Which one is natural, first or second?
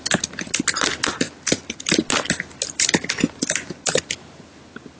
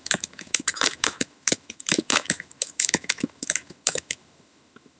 first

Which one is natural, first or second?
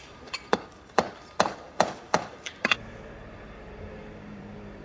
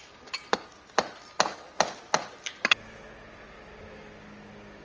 second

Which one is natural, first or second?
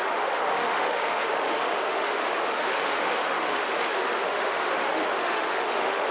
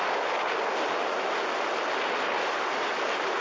second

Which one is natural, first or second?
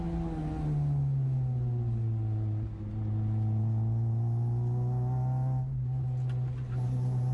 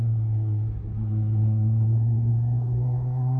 first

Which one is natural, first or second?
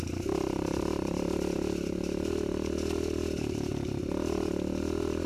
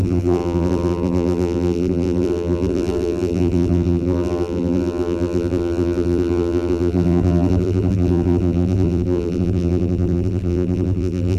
first